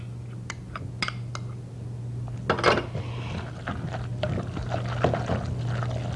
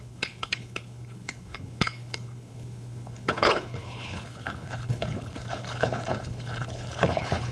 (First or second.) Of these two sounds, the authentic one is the first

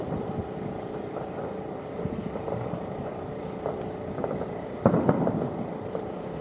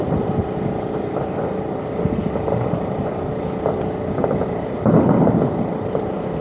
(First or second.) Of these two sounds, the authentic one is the second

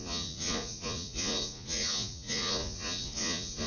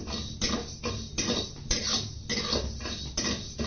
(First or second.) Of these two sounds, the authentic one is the second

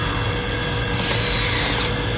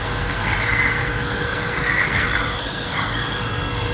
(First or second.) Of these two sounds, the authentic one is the first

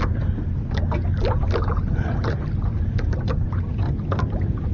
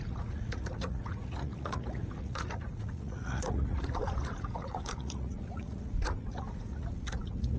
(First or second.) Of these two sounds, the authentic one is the first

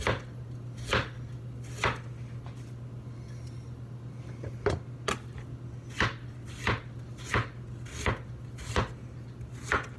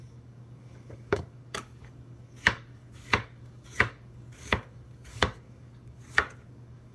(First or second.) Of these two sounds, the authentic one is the first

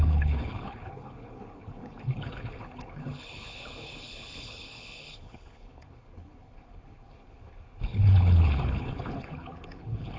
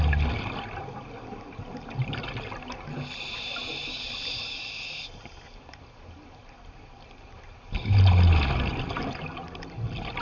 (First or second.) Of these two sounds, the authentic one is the second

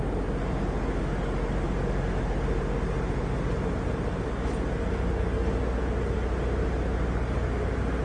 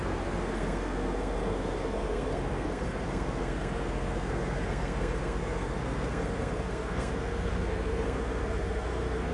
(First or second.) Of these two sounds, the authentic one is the first